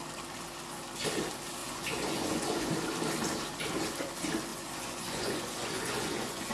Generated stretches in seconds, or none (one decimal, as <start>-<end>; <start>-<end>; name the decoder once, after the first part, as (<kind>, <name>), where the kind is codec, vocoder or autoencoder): 1.6-2.7 (vocoder, Vocos); 4.5-6.5

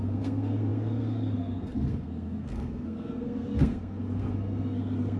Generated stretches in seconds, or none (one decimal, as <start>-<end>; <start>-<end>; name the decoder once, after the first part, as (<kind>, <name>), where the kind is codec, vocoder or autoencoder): 0.0-5.2 (codec, SNAC)